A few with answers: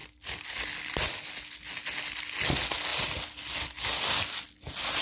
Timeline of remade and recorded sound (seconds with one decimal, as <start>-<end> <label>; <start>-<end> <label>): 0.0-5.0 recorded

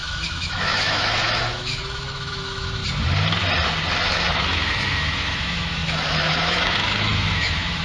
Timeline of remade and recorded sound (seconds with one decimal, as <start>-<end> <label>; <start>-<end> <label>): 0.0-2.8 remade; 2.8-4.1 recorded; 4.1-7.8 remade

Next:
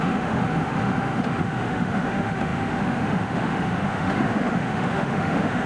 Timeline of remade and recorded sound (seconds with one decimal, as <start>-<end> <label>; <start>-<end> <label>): 0.0-5.7 remade

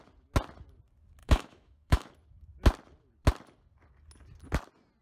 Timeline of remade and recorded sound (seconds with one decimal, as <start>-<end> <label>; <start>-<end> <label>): 0.0-1.2 recorded; 1.2-2.1 remade; 2.1-5.0 recorded